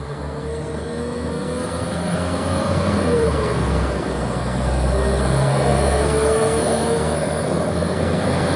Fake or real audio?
fake